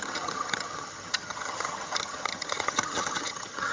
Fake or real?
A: fake